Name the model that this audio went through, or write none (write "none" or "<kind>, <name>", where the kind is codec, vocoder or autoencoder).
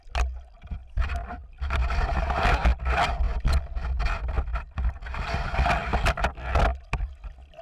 none